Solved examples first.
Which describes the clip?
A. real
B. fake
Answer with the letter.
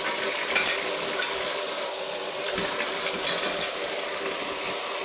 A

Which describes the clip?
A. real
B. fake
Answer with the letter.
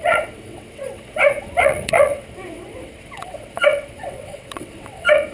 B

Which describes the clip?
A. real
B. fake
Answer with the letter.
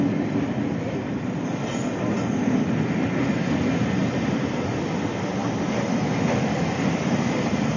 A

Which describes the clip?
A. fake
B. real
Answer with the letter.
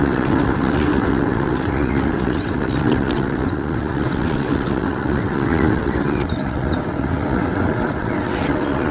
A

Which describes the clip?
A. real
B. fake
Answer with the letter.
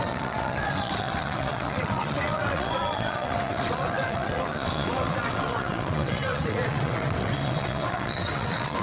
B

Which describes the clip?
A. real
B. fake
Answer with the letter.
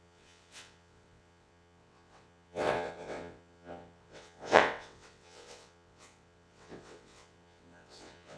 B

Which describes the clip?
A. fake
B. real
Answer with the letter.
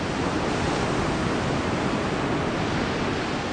B